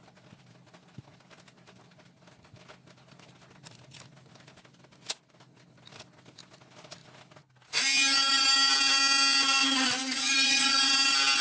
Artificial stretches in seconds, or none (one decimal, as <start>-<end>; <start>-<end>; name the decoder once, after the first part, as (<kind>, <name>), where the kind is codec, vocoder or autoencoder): 10.0-10.8 (vocoder, Vocos)